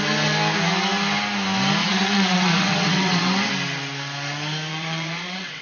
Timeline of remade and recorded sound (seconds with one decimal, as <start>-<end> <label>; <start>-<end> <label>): 0.0-1.8 recorded; 1.8-3.5 remade; 3.5-4.7 recorded; 4.7-5.6 remade